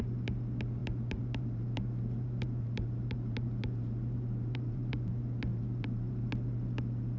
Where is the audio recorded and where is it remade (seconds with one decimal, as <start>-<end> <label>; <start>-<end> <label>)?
0.0-0.8 recorded; 0.8-5.1 remade; 5.1-5.5 recorded; 5.5-6.1 remade; 6.1-7.2 recorded